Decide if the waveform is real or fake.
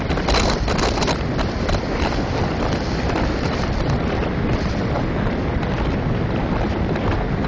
real